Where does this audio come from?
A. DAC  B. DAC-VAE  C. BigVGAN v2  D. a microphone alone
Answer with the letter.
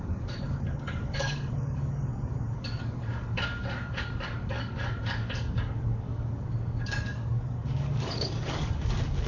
A